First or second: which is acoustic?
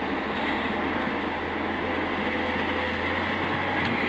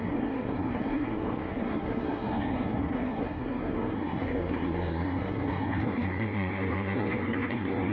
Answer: first